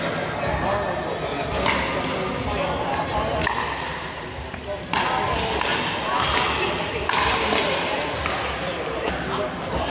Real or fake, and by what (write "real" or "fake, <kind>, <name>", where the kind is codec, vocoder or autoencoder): real